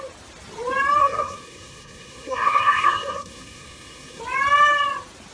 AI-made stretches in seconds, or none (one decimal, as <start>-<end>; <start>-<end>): 1.0-4.2